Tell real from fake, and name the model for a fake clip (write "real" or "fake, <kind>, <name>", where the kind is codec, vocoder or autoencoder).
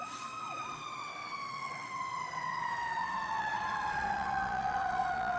fake, vocoder, WaveNeXt